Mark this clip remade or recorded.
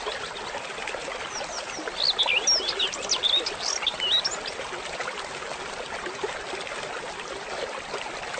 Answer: recorded